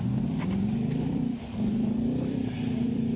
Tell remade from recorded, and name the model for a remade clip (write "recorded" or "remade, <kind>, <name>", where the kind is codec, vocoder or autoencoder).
remade, vocoder, BigVGAN v2